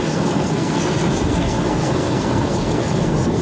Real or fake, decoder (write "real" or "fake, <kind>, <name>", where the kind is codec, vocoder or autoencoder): fake, codec, SNAC